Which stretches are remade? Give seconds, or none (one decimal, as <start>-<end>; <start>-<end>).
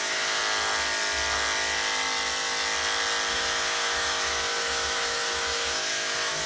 0.0-0.4; 3.3-6.5